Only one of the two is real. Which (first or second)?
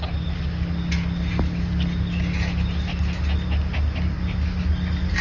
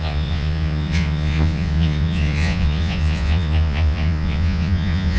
first